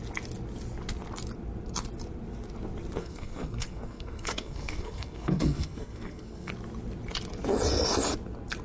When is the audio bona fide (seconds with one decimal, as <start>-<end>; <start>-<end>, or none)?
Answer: 0.0-3.0; 6.5-8.6